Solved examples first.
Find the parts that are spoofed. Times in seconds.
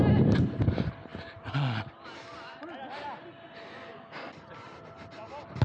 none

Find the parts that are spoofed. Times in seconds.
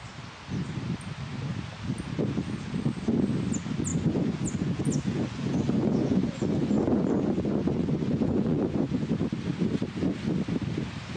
3.9-9.1 (vocoder, Vocos)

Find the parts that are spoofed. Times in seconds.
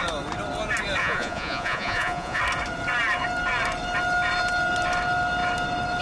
1.0-2.4 (vocoder, Vocos)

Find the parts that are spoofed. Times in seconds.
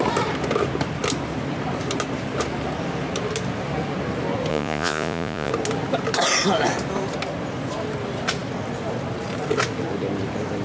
4.5-5.5 (vocoder, Vocos)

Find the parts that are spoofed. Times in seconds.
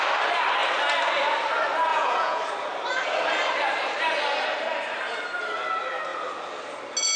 1.9-2.4 (vocoder, Vocos)